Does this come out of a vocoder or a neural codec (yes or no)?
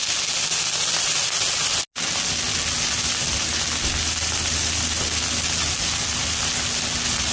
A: no